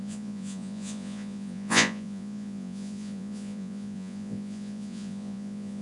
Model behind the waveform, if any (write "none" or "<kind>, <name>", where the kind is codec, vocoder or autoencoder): vocoder, Vocos